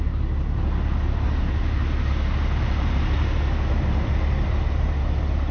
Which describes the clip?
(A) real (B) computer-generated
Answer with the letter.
A